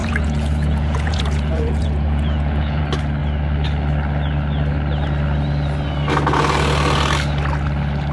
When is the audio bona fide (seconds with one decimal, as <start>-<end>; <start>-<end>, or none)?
2.8-8.1